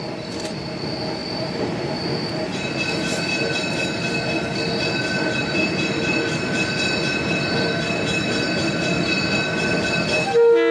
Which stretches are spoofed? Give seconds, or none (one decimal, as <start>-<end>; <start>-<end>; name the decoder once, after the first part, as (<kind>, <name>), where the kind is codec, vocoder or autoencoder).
1.2-2.3 (vocoder, BigVGAN v2)